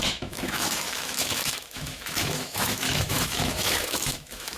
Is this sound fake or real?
fake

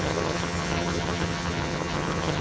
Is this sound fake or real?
fake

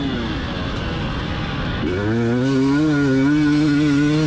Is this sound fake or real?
real